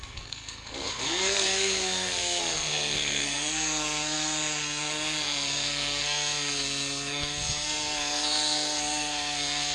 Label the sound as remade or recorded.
remade